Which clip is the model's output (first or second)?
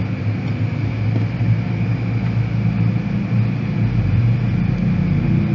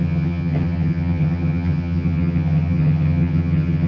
second